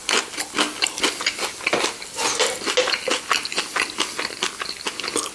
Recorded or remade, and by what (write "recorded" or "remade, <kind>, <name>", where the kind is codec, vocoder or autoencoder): recorded